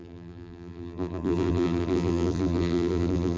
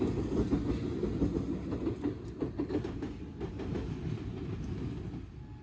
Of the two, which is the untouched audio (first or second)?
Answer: second